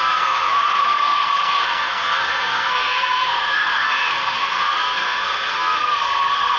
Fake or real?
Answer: fake